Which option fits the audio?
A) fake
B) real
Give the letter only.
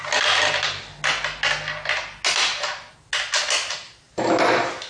B